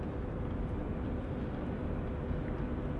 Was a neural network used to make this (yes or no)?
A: no